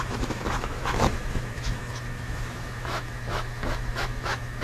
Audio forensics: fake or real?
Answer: fake